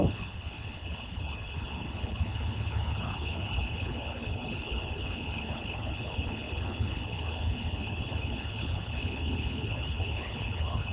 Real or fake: fake